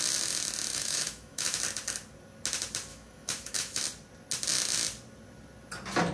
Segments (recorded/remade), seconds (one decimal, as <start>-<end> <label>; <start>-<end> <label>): 0.0-0.7 recorded; 0.7-1.6 remade; 1.6-2.9 recorded; 2.9-3.8 remade; 3.8-6.1 recorded